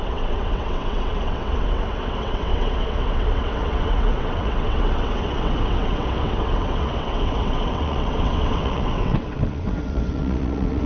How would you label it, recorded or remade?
remade